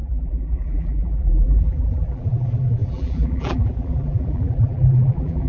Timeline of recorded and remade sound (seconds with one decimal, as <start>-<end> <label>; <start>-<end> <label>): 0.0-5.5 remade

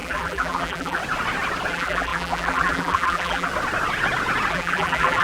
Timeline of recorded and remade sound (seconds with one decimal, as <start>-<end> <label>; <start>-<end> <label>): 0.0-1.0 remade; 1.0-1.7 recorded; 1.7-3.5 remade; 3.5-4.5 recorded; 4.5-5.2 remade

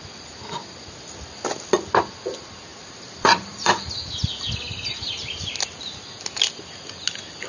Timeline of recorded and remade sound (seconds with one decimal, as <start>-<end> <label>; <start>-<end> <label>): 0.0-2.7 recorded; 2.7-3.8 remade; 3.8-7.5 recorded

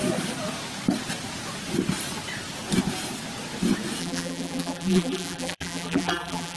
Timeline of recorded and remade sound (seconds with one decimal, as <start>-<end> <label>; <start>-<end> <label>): 0.0-4.0 recorded; 4.0-6.6 remade